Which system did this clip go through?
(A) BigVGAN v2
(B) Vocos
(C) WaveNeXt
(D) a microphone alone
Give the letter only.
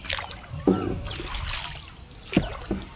D